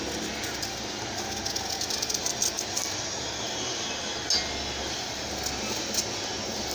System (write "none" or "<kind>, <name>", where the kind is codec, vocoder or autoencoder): none